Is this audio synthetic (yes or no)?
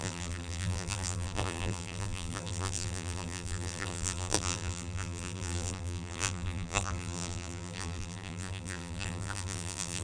yes